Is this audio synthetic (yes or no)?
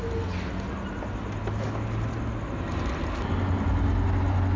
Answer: no